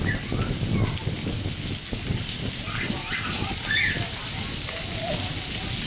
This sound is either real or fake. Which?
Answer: real